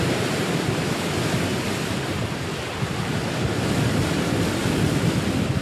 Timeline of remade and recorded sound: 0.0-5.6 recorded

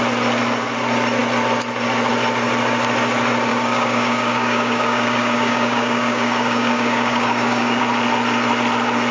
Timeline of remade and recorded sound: 0.0-3.5 recorded; 3.5-7.8 remade; 7.8-9.1 recorded

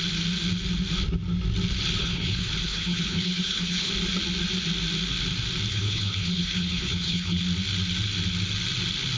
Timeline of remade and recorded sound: 0.0-2.0 recorded; 2.0-3.9 remade; 3.9-5.7 recorded; 5.7-7.4 remade; 7.4-9.2 recorded